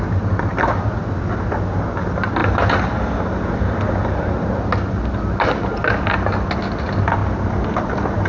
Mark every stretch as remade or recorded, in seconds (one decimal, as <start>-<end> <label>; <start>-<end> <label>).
0.0-8.3 recorded